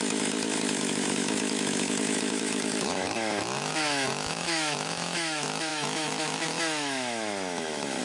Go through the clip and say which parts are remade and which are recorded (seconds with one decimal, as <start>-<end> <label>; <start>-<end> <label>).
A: 0.0-8.0 remade